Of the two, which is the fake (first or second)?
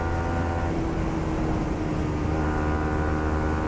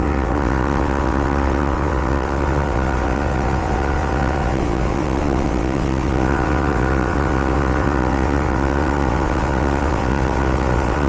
second